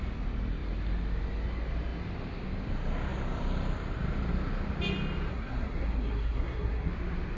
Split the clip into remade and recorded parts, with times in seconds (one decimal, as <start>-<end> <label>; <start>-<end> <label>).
0.0-5.3 recorded; 5.3-6.9 remade; 6.9-7.4 recorded